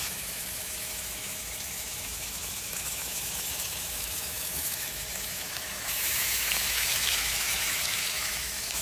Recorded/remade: remade